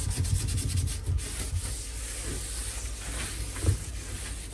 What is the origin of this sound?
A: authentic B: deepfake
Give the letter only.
A